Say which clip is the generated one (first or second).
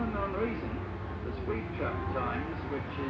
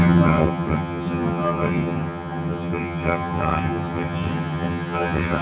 second